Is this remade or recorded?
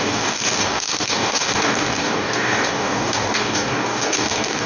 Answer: remade